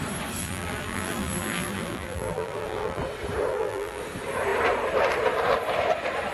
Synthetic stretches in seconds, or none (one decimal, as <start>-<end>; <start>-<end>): 0.4-3.0; 3.5-4.0